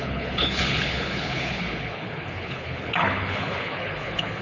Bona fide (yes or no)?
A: no